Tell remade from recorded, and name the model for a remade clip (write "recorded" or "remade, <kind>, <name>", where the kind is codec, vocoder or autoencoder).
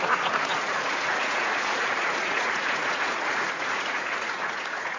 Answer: remade, vocoder, Vocos